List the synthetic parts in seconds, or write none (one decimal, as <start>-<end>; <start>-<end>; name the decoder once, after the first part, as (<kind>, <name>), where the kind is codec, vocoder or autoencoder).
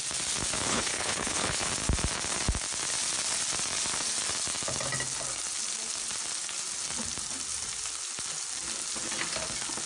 0.7-1.7 (codec, HILCodec)